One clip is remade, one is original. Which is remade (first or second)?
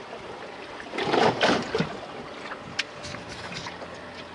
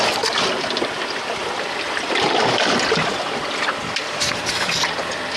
second